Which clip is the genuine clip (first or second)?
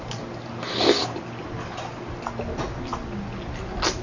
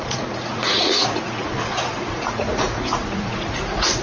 first